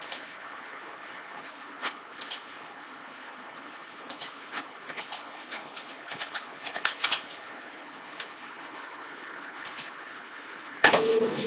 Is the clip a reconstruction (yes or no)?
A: yes